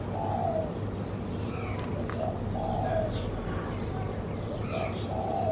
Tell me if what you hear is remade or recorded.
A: recorded